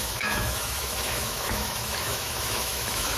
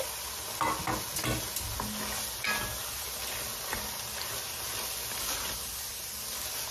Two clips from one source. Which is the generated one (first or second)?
first